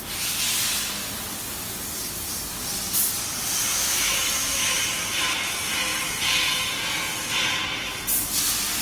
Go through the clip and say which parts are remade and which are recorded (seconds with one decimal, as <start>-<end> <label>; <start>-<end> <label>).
0.0-3.7 recorded; 3.7-4.8 remade; 4.8-8.8 recorded